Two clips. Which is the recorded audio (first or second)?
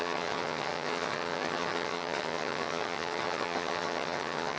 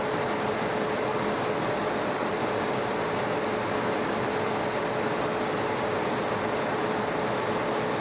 second